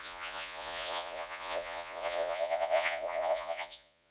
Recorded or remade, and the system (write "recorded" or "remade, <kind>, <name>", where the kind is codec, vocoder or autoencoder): remade, vocoder, Vocos